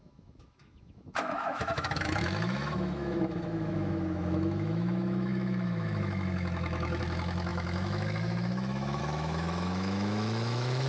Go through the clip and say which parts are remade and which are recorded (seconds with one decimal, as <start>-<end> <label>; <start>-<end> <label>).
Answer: 0.0-10.9 remade